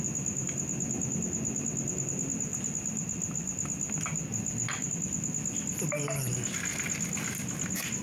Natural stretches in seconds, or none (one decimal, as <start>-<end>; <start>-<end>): 0.0-8.0